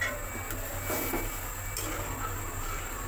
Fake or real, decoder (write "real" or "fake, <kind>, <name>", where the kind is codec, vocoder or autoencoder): real